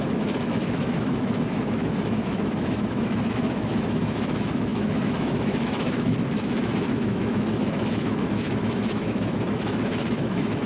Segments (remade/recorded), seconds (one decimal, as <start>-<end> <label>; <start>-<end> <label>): 0.0-10.7 remade

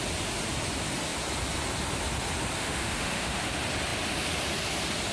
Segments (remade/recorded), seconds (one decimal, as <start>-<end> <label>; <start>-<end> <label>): 0.0-2.6 recorded; 2.6-3.4 remade; 3.4-5.1 recorded

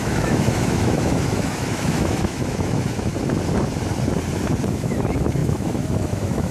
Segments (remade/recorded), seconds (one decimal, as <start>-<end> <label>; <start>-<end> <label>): 0.0-3.1 remade; 3.1-4.7 recorded; 4.7-6.5 remade

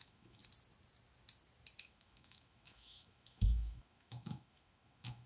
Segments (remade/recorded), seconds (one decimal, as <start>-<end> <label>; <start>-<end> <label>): 0.0-0.4 remade; 0.4-1.8 recorded; 1.8-5.3 remade

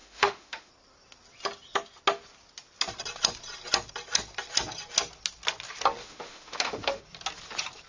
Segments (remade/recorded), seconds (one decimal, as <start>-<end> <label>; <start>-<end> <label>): 0.0-0.7 remade; 0.7-6.0 recorded; 6.0-7.0 remade; 7.0-7.9 recorded

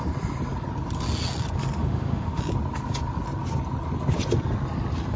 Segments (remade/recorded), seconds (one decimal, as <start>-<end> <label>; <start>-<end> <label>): 0.0-1.8 recorded; 1.8-2.4 remade; 2.4-5.2 recorded

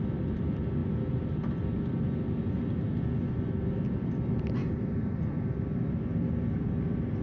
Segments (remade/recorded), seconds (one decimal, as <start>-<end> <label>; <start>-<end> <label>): 0.0-7.2 recorded

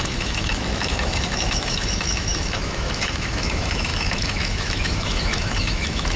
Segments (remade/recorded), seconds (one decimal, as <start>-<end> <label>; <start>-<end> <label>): 0.0-6.2 remade